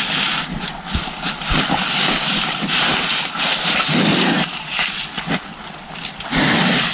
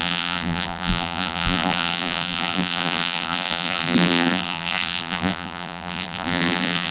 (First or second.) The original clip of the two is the first